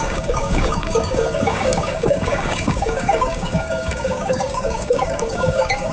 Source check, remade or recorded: remade